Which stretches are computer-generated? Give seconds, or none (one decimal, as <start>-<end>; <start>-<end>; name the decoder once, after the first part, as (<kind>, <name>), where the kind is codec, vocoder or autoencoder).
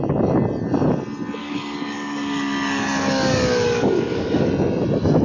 1.4-4.5 (codec, DAC)